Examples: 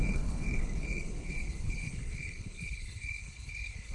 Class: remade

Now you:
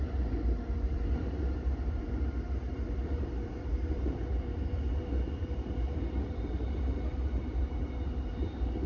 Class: remade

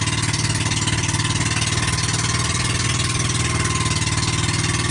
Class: recorded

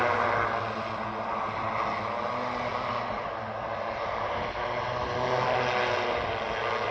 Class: recorded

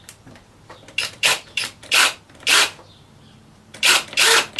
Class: remade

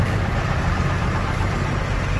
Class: remade